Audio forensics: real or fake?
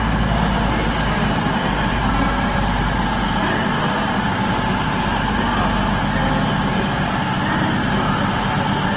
real